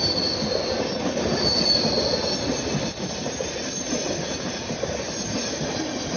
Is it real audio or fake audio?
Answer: real